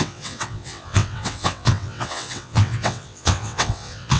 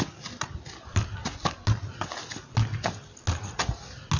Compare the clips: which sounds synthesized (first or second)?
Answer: first